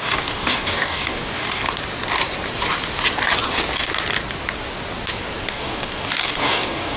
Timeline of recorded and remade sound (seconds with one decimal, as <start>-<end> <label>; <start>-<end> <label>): 0.0-1.6 remade; 1.6-5.5 recorded; 5.5-7.0 remade